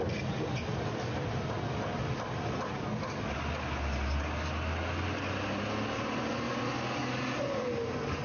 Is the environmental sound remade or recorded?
recorded